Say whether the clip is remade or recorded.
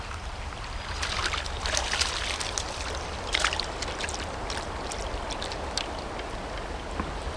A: recorded